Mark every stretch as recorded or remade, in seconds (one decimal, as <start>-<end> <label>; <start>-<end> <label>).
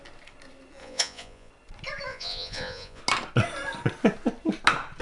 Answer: 0.0-0.8 recorded; 0.8-1.5 remade; 1.5-2.1 recorded; 2.1-3.0 remade; 3.0-5.0 recorded